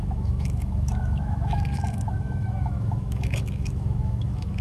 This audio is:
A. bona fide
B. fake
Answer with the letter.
B